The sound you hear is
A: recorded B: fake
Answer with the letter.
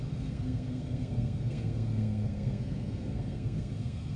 B